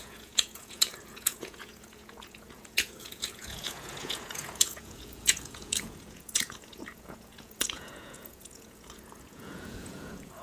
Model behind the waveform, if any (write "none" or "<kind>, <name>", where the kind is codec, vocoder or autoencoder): vocoder, Vocos